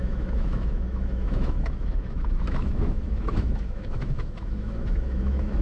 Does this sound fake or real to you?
fake